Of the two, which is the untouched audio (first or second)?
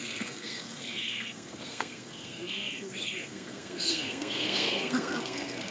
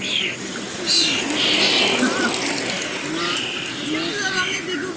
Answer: second